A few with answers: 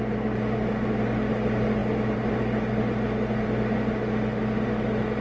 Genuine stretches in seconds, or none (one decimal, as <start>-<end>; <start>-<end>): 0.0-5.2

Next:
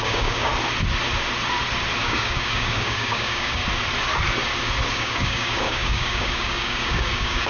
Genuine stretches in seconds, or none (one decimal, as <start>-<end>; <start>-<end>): 0.5-2.0; 3.6-4.9

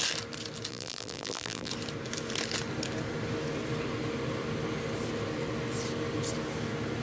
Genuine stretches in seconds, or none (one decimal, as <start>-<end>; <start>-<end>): 0.0-0.7; 1.7-7.0

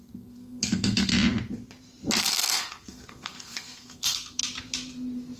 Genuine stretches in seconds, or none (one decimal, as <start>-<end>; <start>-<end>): 1.1-2.2; 4.4-5.4

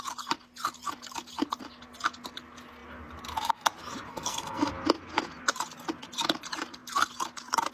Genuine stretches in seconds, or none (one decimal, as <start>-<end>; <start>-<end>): 0.0-4.1; 4.7-7.7

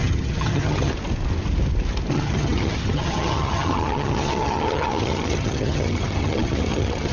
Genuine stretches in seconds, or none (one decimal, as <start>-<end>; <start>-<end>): 0.9-2.1